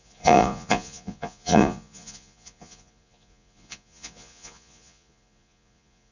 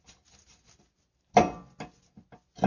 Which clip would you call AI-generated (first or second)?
first